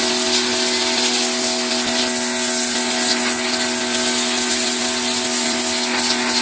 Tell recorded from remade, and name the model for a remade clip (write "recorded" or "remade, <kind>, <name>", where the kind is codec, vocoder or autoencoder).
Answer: recorded